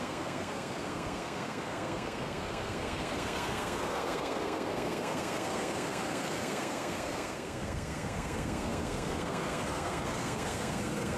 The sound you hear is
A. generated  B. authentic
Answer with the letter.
A